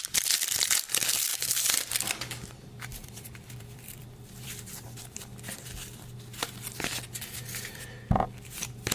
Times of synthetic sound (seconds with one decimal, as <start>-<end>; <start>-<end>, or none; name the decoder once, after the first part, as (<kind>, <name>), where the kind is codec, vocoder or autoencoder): 1.3-1.9 (vocoder, BigVGAN v2); 2.9-5.0